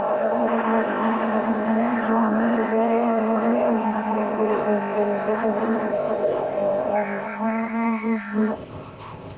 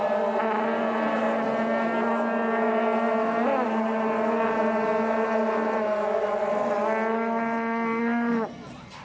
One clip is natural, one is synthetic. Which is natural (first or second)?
second